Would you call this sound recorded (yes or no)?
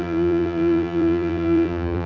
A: no